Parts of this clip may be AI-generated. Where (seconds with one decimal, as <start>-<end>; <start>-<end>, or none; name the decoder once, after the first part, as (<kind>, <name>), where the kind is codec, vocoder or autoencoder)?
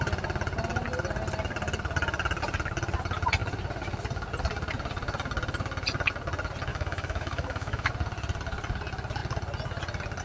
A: 6.7-7.9 (autoencoder, DAC-VAE)